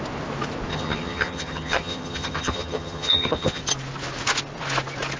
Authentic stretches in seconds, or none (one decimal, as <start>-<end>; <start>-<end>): 0.0-0.7; 3.6-5.2